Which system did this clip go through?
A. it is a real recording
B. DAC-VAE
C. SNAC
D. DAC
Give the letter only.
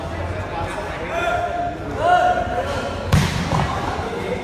A